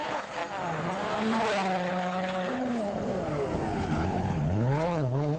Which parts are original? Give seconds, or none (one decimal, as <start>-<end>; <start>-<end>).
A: 0.4-1.9; 3.1-3.7